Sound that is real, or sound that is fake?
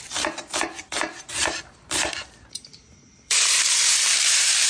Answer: fake